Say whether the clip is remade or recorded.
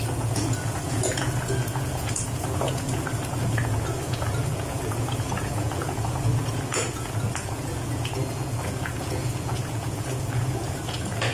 remade